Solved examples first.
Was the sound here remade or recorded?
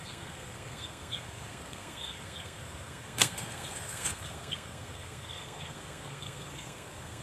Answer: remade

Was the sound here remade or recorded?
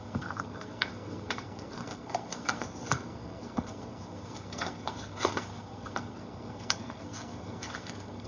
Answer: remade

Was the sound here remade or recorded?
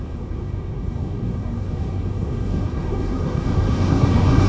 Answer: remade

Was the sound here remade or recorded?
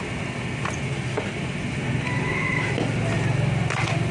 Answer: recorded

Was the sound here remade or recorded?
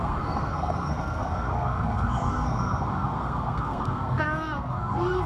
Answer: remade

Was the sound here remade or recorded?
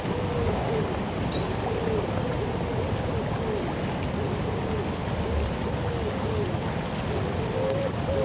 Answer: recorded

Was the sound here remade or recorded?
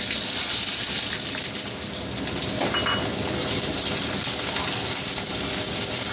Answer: recorded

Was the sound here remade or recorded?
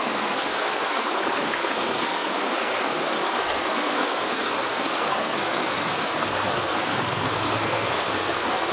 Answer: remade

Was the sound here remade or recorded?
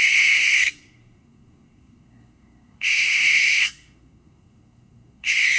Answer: remade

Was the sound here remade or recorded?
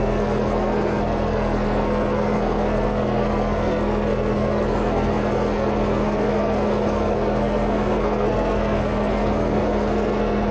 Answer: remade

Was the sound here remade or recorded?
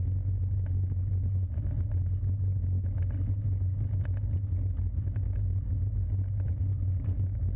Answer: recorded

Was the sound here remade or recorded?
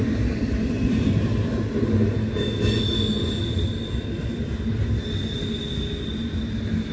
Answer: recorded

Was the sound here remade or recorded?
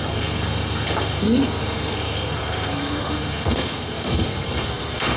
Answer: remade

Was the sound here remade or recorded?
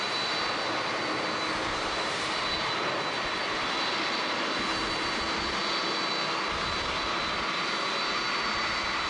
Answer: recorded